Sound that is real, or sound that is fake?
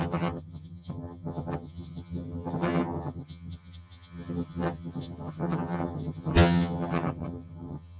fake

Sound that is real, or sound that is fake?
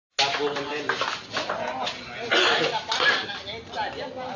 real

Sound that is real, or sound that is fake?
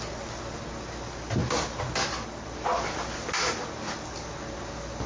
real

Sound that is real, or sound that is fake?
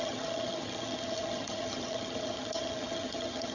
fake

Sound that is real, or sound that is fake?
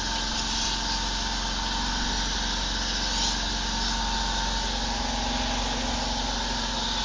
real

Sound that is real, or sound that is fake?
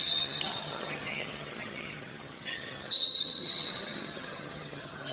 fake